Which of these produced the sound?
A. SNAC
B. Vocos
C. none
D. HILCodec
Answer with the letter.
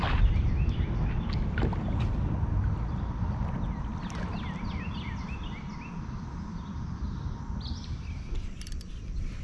C